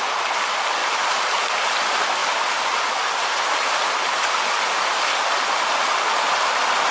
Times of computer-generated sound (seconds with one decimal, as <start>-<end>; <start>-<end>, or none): 2.2-4.1